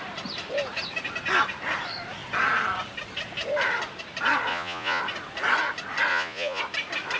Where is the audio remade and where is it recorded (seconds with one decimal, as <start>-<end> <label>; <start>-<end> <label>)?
0.0-4.5 recorded; 4.5-5.0 remade; 5.0-6.1 recorded; 6.1-6.6 remade; 6.6-7.2 recorded